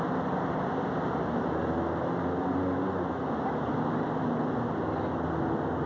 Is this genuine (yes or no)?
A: yes